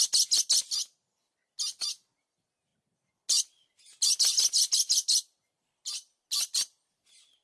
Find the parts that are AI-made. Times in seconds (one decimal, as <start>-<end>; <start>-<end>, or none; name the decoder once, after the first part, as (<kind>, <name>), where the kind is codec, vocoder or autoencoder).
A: none